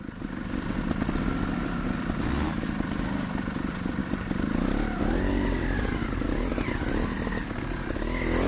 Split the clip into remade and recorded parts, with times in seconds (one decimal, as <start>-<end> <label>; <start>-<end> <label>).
0.0-8.5 recorded